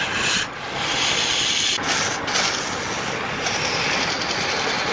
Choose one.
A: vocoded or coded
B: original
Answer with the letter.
B